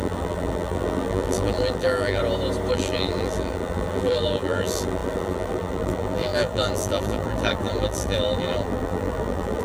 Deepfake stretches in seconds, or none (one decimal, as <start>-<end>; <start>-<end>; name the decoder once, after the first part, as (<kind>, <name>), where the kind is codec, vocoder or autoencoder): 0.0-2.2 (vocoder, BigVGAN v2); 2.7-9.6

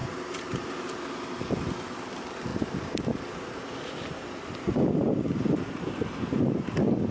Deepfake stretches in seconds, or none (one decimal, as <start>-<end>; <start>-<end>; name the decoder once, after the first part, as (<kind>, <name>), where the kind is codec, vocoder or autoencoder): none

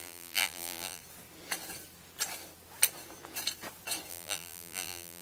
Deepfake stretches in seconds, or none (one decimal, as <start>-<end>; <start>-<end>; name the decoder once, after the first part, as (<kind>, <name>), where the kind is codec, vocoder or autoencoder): 0.0-1.0 (vocoder, BigVGAN v2); 4.1-5.2

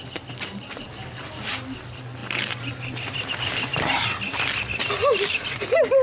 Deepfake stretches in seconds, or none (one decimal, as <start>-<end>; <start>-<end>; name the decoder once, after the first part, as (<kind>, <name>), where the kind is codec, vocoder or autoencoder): 2.2-3.3 (vocoder, BigVGAN v2)

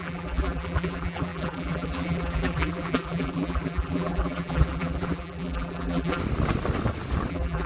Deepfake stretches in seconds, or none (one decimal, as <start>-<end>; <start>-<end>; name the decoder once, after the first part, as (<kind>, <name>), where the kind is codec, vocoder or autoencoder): 0.0-6.2 (vocoder, BigVGAN v2); 7.3-7.7